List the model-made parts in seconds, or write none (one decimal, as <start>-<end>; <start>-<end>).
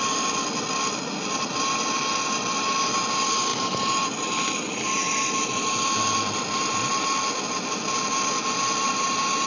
none